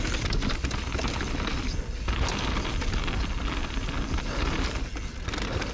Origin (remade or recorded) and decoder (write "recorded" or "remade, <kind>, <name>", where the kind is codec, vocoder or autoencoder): recorded